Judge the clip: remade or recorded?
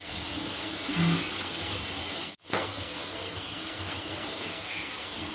remade